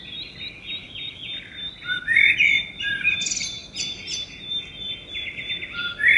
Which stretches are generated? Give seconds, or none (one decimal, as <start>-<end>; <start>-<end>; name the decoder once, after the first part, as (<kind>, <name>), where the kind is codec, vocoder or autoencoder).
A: none